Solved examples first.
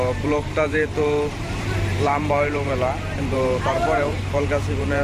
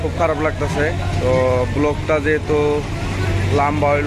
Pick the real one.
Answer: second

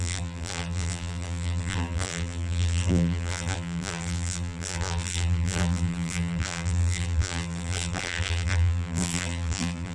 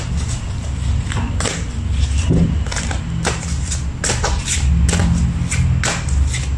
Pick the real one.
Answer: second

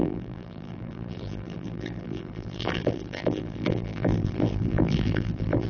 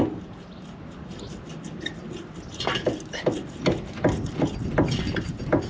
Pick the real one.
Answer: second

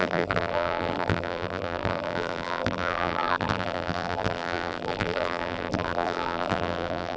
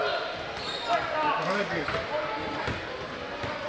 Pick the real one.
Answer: second